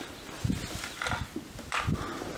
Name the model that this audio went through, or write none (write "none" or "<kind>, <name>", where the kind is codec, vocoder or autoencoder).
none